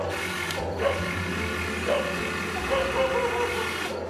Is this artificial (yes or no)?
no